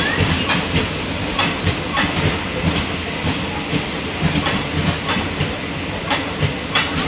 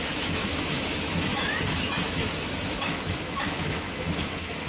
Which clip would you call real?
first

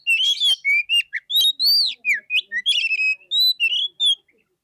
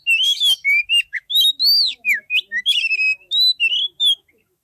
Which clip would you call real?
first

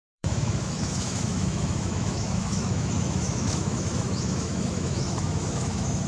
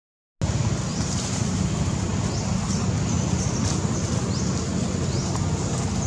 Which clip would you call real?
second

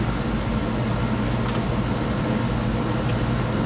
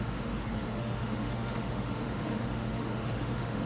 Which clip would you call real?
first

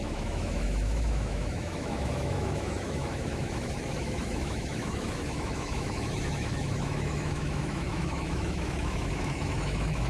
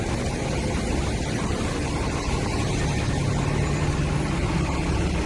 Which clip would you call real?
second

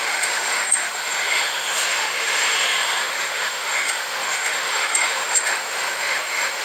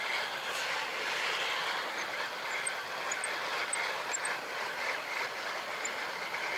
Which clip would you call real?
second